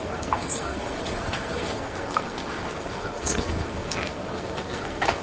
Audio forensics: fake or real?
fake